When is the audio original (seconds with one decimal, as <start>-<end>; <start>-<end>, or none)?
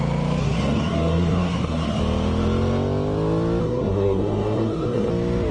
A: 0.0-0.4; 2.0-3.6; 5.1-5.5